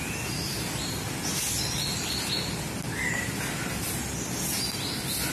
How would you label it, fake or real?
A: real